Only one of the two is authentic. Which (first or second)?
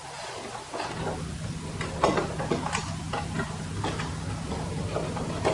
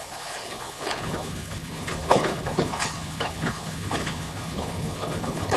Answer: first